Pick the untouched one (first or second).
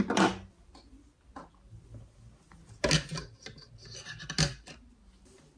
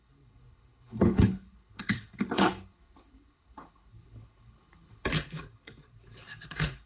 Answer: first